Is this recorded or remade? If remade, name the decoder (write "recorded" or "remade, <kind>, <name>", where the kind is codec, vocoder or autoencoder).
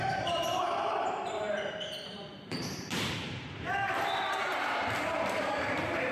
remade, vocoder, BigVGAN v2